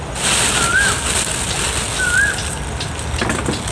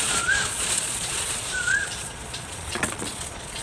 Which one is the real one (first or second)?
first